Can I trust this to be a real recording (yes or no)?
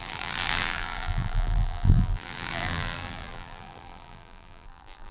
no